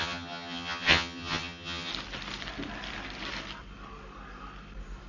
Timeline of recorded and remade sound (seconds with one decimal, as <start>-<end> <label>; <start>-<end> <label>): 0.0-1.9 remade; 1.9-5.1 recorded